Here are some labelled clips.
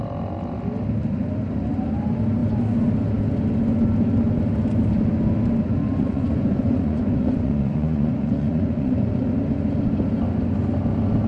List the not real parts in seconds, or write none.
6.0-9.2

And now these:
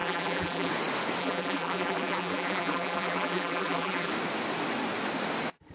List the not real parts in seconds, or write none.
0.0-0.7; 1.2-4.1

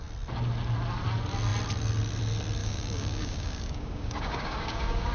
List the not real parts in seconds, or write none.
2.6-5.1

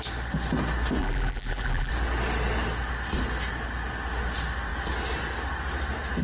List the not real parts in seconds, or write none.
1.0-1.9

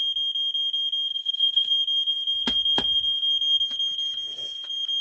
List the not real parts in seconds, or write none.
1.1-1.7

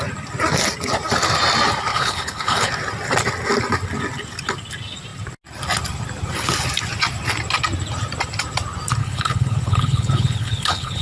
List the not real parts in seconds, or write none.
1.9-2.7; 9.0-11.0